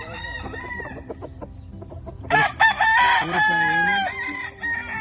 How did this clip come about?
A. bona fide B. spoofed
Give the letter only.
B